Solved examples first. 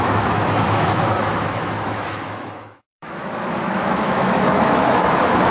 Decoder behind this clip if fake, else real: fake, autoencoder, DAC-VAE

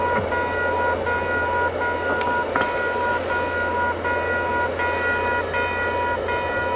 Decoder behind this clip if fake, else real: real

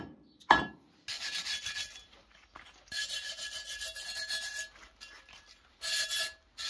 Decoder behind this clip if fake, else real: real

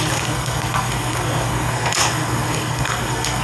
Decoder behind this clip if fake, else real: fake, codec, SNAC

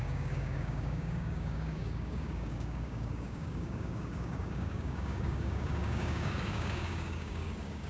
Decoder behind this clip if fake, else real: fake, codec, DAC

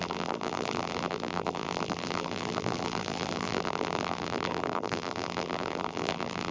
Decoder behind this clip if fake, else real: fake, vocoder, BigVGAN v2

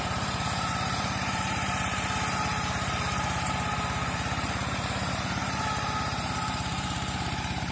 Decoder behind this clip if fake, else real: fake, vocoder, BigVGAN v2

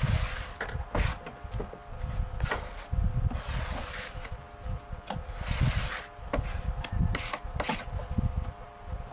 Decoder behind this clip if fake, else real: real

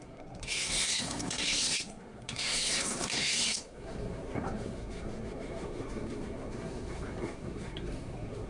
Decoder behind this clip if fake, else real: fake, codec, SNAC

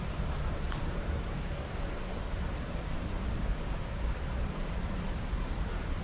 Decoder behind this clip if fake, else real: fake, vocoder, BigVGAN v2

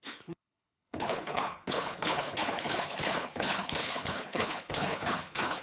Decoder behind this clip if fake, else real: fake, codec, HILCodec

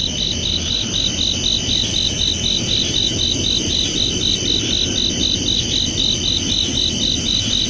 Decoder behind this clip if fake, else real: real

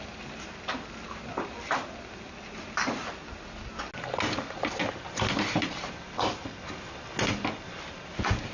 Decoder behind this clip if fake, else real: real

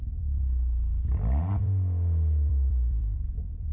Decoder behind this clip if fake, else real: fake, vocoder, BigVGAN v2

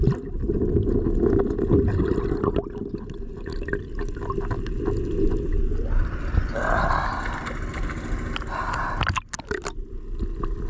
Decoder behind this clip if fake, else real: real